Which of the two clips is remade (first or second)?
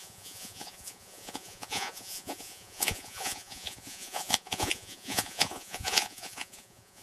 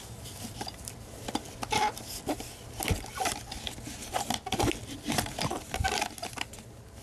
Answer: first